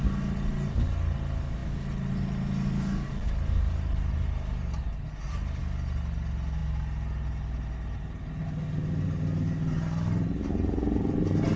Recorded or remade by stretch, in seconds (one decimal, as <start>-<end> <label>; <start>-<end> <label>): 0.0-11.6 recorded